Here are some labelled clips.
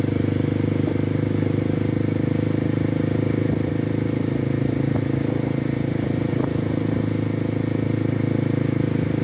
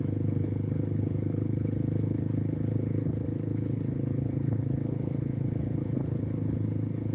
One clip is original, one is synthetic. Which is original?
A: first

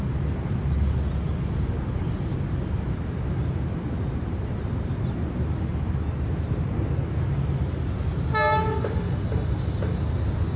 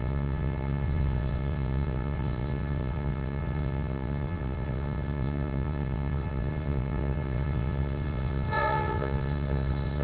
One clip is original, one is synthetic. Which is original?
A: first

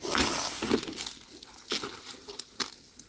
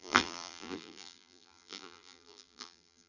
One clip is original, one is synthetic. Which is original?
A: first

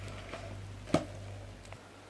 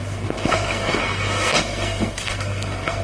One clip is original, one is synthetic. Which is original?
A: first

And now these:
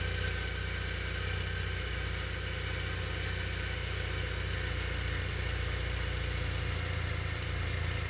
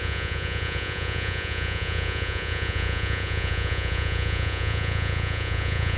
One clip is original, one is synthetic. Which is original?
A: first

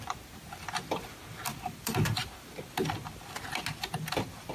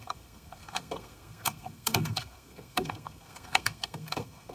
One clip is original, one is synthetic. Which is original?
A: first